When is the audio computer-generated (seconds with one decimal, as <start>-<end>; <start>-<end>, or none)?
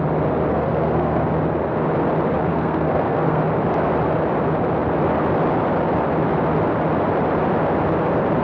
0.5-1.3; 2.5-3.4